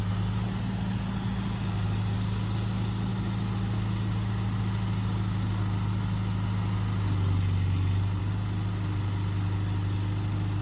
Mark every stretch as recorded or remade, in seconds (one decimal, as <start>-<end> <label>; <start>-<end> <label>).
0.0-10.6 recorded